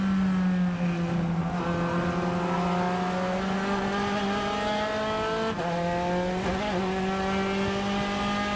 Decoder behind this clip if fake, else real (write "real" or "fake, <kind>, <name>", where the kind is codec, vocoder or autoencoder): real